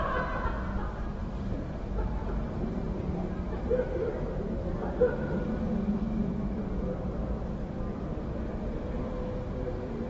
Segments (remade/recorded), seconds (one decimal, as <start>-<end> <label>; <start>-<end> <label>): 0.0-1.2 recorded; 1.2-5.1 remade; 5.1-10.1 recorded